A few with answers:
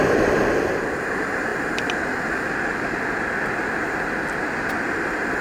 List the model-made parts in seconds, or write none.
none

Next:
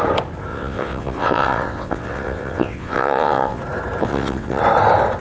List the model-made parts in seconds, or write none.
0.5-3.6; 4.0-4.6

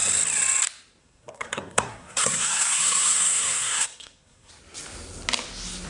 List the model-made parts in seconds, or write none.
1.0-4.5